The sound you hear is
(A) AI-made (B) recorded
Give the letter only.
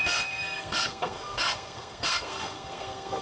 A